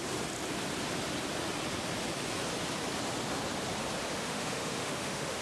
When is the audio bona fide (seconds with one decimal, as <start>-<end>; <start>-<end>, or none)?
0.0-4.1